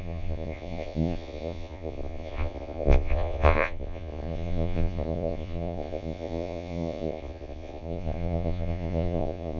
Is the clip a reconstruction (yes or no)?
yes